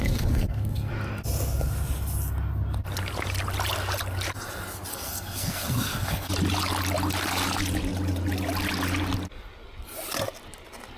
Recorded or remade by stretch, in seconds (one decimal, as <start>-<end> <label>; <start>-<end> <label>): 0.0-0.9 remade; 0.9-4.9 recorded; 4.9-6.3 remade; 6.3-11.0 recorded